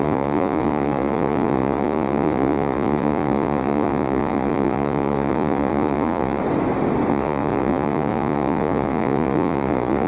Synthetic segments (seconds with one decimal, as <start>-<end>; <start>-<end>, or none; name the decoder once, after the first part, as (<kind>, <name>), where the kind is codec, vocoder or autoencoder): 0.0-6.4 (vocoder, Vocos); 7.1-10.1